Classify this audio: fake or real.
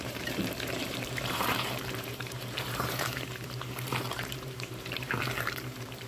fake